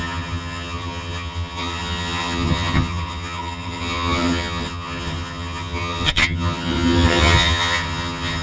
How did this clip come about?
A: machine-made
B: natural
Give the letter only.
A